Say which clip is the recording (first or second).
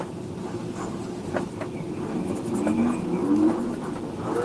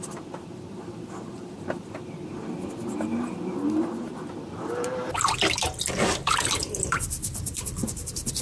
first